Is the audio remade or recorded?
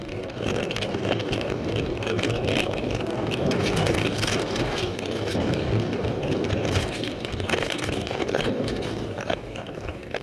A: remade